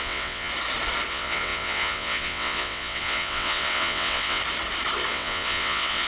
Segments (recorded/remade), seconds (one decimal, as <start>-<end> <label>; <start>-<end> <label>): 0.0-0.5 remade; 0.5-1.1 recorded; 1.1-4.4 remade; 4.4-5.1 recorded; 5.1-6.1 remade